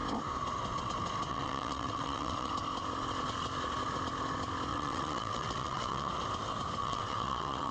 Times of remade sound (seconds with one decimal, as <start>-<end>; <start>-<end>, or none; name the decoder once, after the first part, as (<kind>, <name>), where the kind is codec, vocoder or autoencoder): 1.3-2.5 (vocoder, WaveNeXt); 4.7-6.1; 6.8-7.7